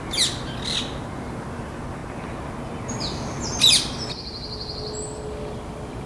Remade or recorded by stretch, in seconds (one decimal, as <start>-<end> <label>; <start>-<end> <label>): 0.0-6.1 recorded